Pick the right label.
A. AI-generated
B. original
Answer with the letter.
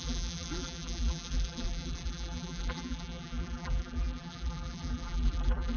A